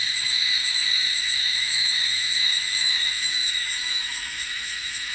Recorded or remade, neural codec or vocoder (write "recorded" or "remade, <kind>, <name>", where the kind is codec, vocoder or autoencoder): remade, autoencoder, DAC-VAE